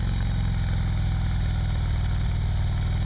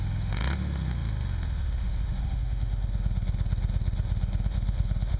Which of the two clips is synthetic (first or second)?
second